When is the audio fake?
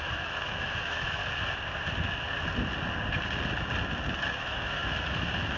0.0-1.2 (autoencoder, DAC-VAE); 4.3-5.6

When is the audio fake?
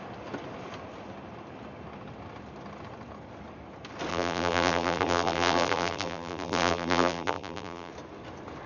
4.1-7.9 (vocoder, BigVGAN v2)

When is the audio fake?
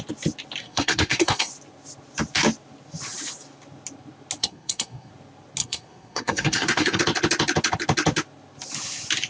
0.6-1.5 (codec, SNAC); 4.4-5.1; 5.6-7.0